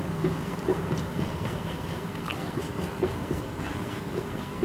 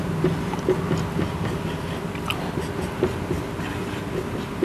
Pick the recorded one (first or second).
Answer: second